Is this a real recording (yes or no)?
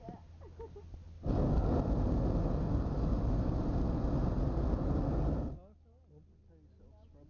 yes